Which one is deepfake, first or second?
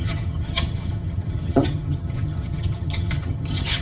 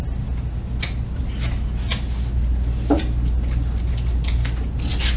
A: first